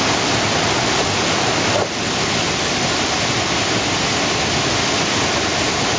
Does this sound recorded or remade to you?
recorded